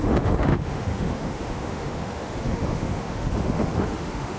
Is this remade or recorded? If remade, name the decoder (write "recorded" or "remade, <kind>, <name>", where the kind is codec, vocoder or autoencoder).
remade, autoencoder, DAC-VAE